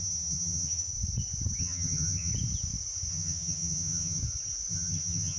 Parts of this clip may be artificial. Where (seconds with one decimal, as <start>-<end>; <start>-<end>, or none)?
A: 0.0-0.9; 1.6-2.3; 3.1-4.2; 4.7-5.4